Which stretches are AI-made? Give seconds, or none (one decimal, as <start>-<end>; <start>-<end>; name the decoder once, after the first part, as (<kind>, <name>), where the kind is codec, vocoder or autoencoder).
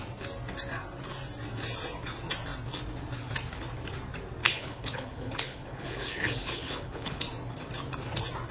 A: 4.4-7.2 (codec, HILCodec)